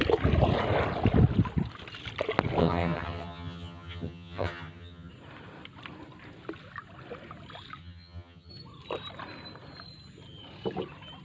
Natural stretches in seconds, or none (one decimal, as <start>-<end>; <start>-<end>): 0.0-2.6; 5.1-7.8; 8.5-11.2